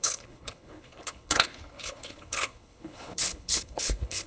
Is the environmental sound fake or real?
fake